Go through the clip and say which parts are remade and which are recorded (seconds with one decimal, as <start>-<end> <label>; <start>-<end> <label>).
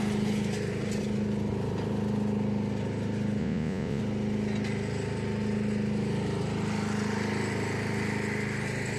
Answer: 0.0-3.4 recorded; 3.4-4.0 remade; 4.0-9.0 recorded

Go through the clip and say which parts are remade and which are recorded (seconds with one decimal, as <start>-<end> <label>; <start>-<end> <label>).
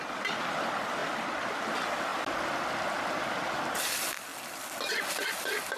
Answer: 0.0-5.8 recorded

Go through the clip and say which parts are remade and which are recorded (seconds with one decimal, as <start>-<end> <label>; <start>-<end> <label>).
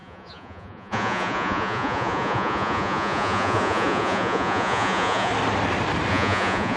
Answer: 0.0-5.3 remade; 5.3-6.1 recorded; 6.1-6.8 remade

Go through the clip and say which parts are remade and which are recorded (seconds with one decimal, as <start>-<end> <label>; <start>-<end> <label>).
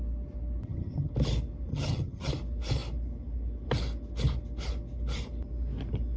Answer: 0.0-0.6 recorded; 0.6-1.1 remade; 1.1-1.7 recorded; 1.7-2.3 remade; 2.3-6.2 recorded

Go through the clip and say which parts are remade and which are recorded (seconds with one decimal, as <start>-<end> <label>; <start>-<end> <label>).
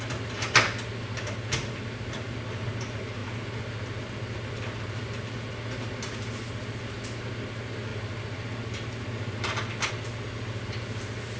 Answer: 0.0-11.4 recorded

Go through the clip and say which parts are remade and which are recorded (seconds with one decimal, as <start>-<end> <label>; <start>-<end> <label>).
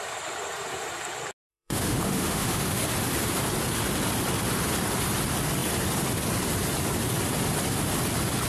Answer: 0.0-1.5 recorded; 1.5-2.8 remade; 2.8-8.5 recorded